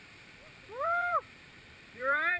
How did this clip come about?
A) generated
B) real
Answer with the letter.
A